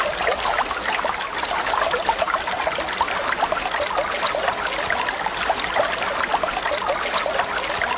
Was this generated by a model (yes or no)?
no